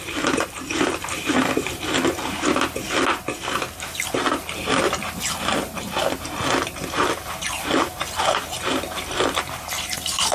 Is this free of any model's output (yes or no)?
yes